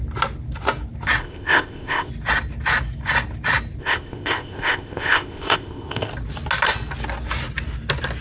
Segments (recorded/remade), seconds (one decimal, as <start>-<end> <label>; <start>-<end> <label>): 0.0-1.2 recorded; 1.2-2.1 remade; 2.1-3.8 recorded; 3.8-6.1 remade; 6.1-8.2 recorded